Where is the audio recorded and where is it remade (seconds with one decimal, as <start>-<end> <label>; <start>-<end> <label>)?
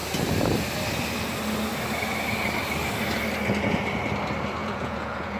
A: 0.0-4.6 recorded; 4.6-5.4 remade